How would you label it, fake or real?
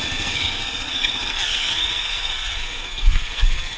fake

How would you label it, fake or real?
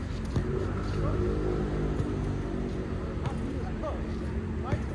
real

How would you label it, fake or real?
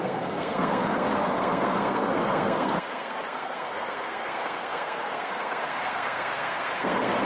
fake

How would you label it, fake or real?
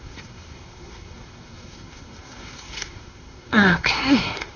fake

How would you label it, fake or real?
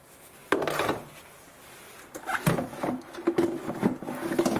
real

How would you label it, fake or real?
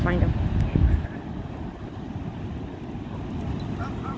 real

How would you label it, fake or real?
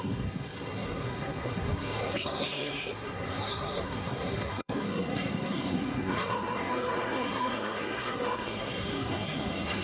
fake